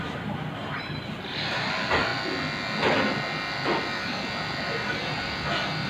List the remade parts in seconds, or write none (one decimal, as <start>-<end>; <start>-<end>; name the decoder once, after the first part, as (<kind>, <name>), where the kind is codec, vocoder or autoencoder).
0.6-1.7 (vocoder, BigVGAN v2)